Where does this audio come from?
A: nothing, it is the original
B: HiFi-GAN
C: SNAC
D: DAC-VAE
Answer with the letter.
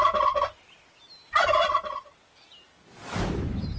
A